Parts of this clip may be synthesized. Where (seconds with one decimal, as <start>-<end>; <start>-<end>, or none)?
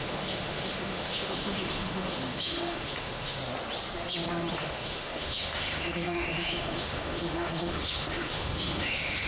0.0-3.4; 4.5-9.3